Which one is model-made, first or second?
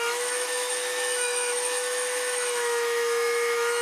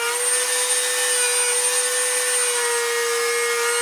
first